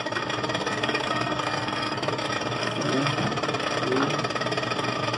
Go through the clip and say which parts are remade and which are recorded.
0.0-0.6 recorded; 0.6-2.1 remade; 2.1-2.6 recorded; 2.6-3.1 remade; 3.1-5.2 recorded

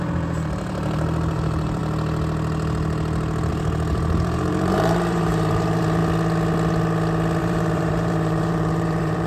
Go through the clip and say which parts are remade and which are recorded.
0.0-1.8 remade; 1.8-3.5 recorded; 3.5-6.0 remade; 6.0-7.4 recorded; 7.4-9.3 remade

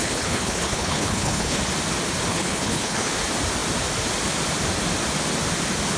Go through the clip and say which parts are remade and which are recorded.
0.0-1.6 remade; 1.6-2.3 recorded; 2.3-3.1 remade; 3.1-6.0 recorded